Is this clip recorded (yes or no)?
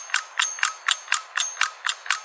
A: no